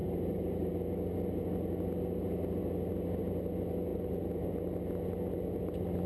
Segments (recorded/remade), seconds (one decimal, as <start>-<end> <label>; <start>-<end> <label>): 0.0-0.7 remade; 0.7-3.9 recorded; 3.9-4.8 remade; 4.8-6.1 recorded